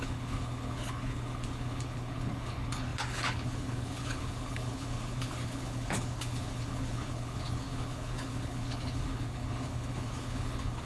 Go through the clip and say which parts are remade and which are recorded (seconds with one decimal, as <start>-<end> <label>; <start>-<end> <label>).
0.0-10.9 remade